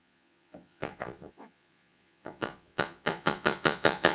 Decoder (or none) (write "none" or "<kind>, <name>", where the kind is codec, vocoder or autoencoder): vocoder, Vocos